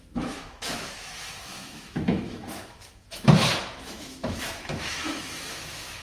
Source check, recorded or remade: remade